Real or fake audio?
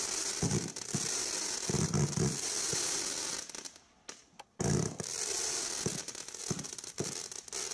real